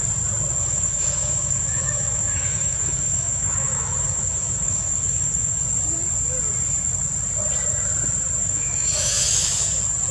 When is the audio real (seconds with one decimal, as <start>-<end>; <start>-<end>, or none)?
0.0-0.6; 5.6-8.4; 9.7-10.1